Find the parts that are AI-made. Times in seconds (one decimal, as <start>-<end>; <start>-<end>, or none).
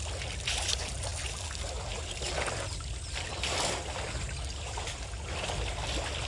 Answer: none